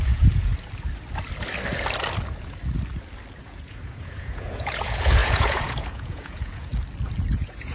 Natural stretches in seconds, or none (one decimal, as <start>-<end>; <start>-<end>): 0.5-3.4; 6.7-7.3